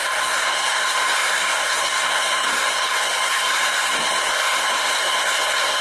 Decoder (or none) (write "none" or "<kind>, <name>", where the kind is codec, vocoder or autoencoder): codec, SNAC